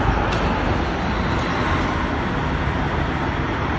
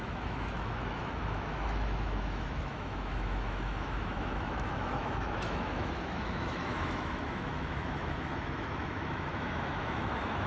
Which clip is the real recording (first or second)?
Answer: first